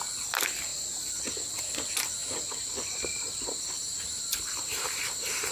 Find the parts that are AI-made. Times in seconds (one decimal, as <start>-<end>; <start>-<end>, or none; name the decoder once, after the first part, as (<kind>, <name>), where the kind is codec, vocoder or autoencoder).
none